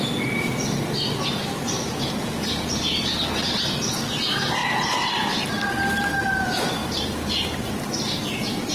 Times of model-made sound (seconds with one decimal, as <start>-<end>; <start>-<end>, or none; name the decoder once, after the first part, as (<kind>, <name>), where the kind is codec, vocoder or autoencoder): 4.6-5.5 (vocoder, BigVGAN v2); 6.8-7.8